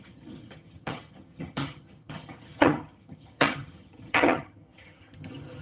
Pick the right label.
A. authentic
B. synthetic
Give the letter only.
B